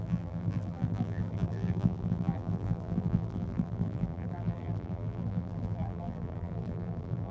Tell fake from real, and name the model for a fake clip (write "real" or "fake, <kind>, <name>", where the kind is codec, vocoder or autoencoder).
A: fake, vocoder, BigVGAN v2